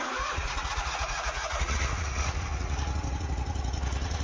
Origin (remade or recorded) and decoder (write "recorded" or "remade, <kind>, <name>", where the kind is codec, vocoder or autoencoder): remade, vocoder, Vocos